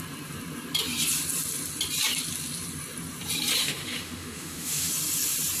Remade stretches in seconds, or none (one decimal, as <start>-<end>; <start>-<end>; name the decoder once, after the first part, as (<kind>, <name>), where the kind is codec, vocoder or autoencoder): 3.6-4.9 (autoencoder, DAC-VAE)